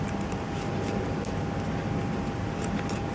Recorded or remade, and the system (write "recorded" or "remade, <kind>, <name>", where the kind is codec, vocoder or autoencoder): recorded